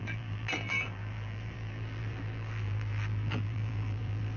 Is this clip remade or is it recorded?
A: remade